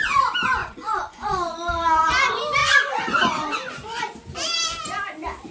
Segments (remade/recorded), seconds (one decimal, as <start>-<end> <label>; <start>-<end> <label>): 0.0-0.6 recorded; 0.6-2.0 remade; 2.0-2.6 recorded; 2.6-4.0 remade; 4.0-5.5 recorded